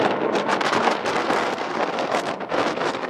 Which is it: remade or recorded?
remade